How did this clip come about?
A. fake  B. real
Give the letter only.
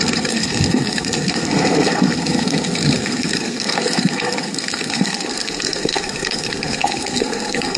A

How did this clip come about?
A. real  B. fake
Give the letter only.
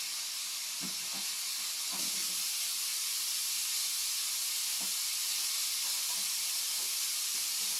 A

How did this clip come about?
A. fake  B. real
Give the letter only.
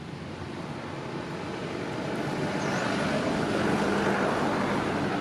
B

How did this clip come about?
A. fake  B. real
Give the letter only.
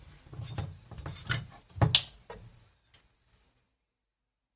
B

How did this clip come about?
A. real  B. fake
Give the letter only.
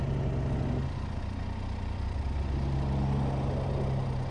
A